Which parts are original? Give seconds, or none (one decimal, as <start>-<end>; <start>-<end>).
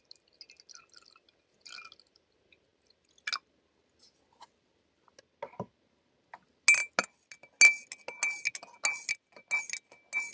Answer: 0.0-10.3